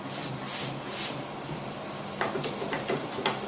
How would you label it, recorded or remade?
recorded